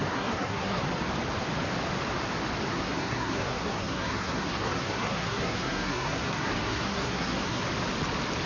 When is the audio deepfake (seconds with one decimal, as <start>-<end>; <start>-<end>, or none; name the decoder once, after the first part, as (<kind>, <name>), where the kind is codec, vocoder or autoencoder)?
0.0-0.8 (codec, SNAC); 2.7-7.6